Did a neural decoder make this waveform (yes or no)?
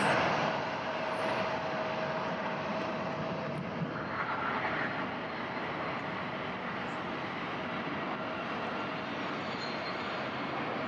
no